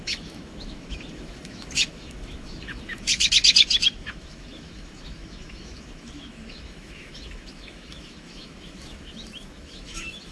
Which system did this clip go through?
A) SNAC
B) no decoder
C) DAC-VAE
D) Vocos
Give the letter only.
C